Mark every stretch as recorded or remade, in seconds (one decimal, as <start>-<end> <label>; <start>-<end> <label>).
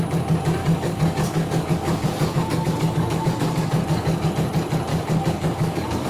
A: 0.0-0.6 recorded; 0.6-4.3 remade; 4.3-4.9 recorded; 4.9-6.1 remade